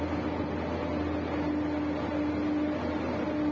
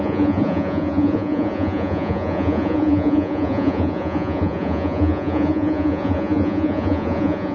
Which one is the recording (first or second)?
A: first